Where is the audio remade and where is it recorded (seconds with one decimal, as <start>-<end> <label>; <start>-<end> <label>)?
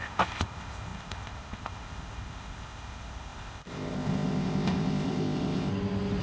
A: 0.0-5.7 remade; 5.7-6.2 recorded